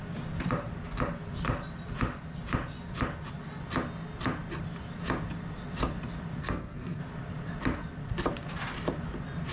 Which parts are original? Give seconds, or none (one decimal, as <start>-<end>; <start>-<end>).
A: 0.0-6.4; 7.0-9.5